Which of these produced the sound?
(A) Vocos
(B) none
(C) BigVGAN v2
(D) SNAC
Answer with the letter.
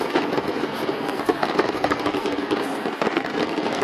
D